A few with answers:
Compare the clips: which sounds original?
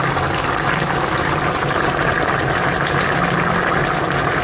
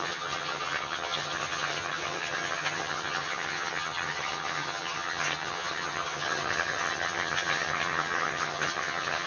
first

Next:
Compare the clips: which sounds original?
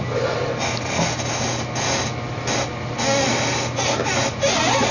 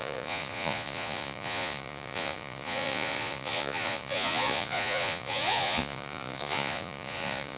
first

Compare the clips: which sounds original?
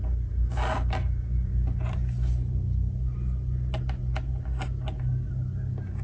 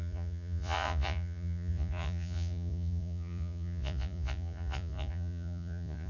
first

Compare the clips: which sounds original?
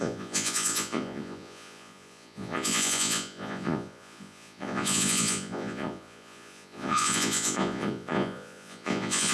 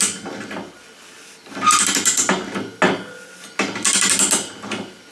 second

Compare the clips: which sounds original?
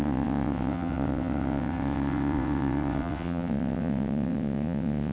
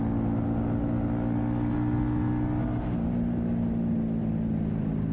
second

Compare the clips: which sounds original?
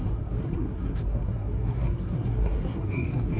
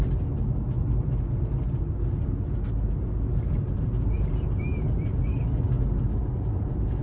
second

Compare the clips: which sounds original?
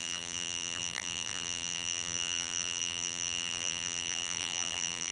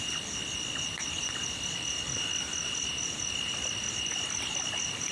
second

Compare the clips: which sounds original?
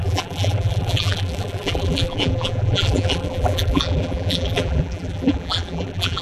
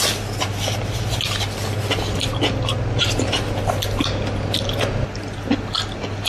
second